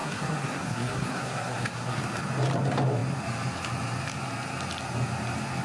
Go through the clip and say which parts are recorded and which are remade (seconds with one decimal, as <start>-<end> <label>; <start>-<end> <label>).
0.0-2.0 remade; 2.0-5.6 recorded